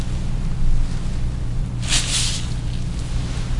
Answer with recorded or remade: recorded